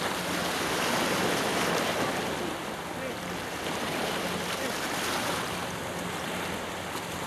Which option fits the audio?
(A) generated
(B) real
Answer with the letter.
B